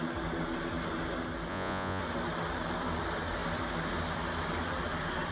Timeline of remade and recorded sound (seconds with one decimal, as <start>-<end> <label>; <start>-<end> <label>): 0.0-1.5 recorded; 1.5-2.0 remade; 2.0-5.3 recorded